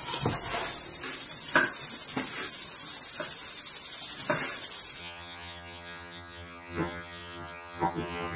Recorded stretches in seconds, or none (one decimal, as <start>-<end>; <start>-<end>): 0.0-5.0